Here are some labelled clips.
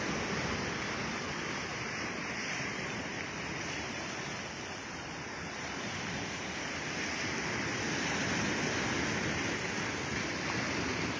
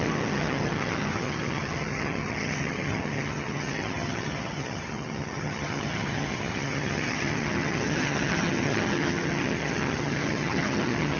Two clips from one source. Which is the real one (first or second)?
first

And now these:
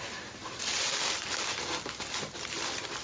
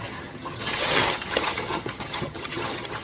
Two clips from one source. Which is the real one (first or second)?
first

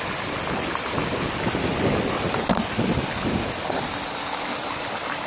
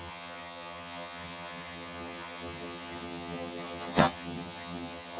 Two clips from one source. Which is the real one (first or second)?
first